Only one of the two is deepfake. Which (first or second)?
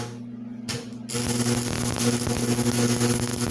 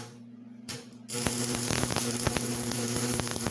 second